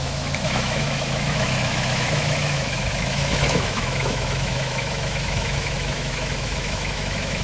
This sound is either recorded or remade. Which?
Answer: remade